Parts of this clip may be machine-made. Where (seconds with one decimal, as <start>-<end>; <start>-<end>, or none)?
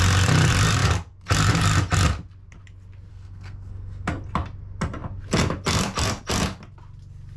3.1-4.1